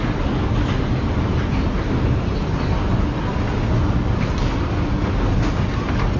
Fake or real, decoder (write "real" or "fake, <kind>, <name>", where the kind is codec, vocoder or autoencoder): real